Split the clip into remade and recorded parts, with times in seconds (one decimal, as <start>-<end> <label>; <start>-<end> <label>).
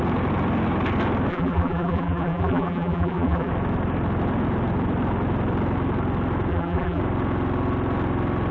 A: 0.0-1.3 recorded; 1.3-3.5 remade; 3.5-6.5 recorded; 6.5-7.0 remade; 7.0-8.5 recorded